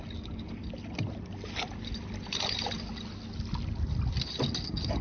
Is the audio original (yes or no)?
yes